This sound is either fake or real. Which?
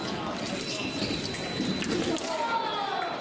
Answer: real